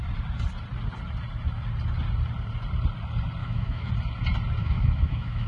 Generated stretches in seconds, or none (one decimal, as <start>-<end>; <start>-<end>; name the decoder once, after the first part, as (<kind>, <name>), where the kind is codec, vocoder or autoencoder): 3.4-3.9 (autoencoder, DAC-VAE); 4.6-5.5